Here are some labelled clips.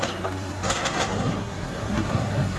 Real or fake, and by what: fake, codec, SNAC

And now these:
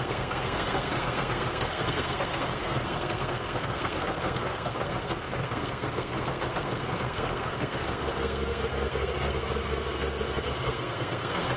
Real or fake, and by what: fake, codec, SNAC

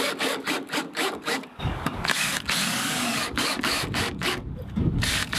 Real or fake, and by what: fake, codec, DAC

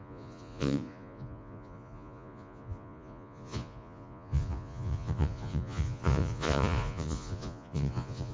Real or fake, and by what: fake, vocoder, Vocos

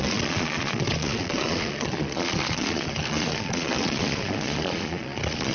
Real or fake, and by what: fake, vocoder, Vocos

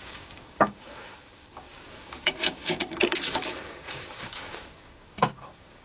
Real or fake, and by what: fake, codec, DAC